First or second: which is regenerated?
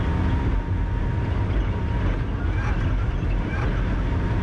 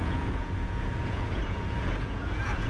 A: second